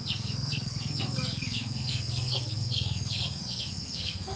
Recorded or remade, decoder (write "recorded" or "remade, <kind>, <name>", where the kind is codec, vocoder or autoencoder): remade, codec, SNAC